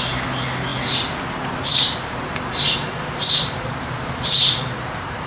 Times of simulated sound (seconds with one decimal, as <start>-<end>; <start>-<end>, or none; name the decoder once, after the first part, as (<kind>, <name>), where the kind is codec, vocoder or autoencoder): 1.7-5.3 (vocoder, BigVGAN v2)